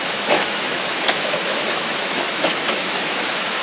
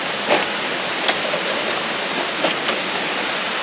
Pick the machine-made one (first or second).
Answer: first